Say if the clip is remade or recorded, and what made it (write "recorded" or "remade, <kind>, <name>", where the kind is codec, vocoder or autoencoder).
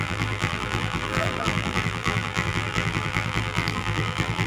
remade, vocoder, BigVGAN v2